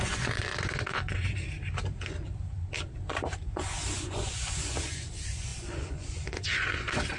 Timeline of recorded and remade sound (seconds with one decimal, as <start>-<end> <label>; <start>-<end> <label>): 0.0-1.1 remade; 1.1-3.4 recorded; 3.4-7.2 remade